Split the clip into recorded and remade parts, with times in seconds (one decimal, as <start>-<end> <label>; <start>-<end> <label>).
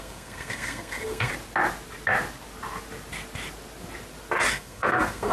0.0-1.3 remade; 1.3-4.5 recorded; 4.5-5.3 remade